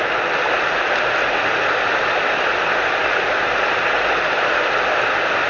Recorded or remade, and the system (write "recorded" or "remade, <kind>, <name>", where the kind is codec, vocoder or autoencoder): recorded